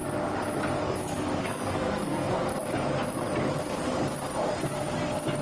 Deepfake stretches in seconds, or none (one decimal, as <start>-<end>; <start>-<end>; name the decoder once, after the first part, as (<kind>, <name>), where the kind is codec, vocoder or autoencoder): 1.4-2.5 (codec, SNAC)